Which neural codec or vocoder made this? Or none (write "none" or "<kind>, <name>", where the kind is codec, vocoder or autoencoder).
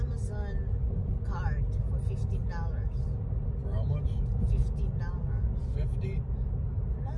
none